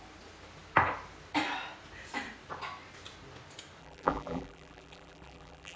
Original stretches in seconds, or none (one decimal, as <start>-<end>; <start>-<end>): 0.0-3.8